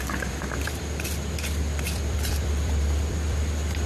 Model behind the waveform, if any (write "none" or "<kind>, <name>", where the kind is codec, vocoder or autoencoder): vocoder, BigVGAN v2